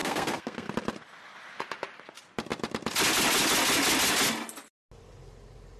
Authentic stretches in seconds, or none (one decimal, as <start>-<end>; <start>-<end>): 0.7-5.8